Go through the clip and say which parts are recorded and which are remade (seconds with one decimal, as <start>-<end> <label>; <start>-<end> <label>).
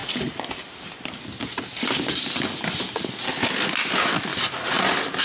0.0-3.1 remade; 3.1-4.3 recorded; 4.3-4.8 remade; 4.8-5.2 recorded